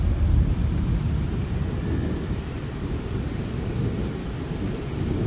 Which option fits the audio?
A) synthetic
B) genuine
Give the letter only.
B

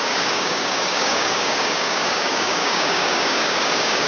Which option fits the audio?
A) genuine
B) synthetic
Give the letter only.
B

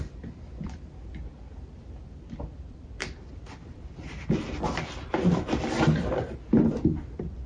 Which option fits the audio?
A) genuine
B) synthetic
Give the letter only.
B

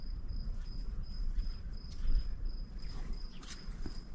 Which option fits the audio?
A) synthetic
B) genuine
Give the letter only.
A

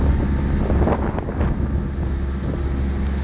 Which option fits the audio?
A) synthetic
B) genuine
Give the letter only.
B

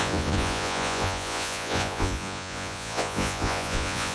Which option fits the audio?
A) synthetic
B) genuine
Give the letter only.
A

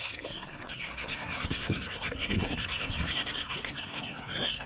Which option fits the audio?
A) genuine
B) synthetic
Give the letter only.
B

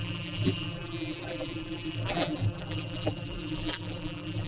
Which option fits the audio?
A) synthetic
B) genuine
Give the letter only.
A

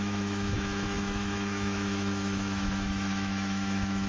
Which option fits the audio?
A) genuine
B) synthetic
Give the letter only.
B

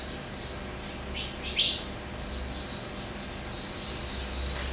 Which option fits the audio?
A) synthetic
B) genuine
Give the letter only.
B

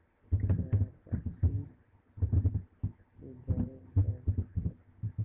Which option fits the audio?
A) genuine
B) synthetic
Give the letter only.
A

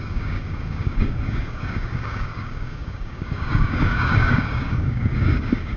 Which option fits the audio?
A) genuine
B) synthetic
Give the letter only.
B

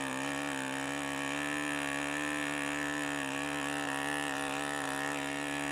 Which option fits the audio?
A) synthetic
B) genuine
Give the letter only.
B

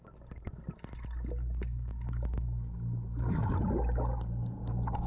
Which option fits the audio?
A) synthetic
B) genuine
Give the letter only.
B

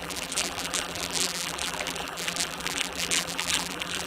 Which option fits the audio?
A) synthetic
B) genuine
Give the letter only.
A